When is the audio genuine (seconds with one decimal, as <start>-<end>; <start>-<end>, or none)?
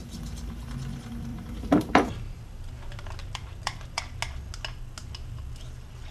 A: 0.0-1.3; 2.7-3.2; 4.0-6.1